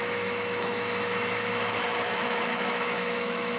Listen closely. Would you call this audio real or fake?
fake